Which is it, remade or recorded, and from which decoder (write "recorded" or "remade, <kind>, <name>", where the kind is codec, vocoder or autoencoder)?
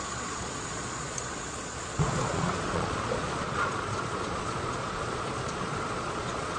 remade, vocoder, Vocos